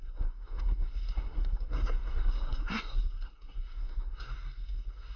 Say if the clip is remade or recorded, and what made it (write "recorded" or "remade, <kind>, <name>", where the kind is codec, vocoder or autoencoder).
remade, codec, SNAC